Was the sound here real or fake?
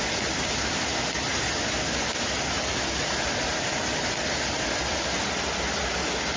real